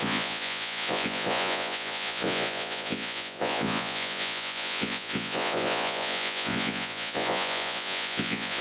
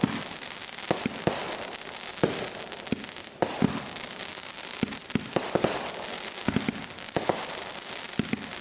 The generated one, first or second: first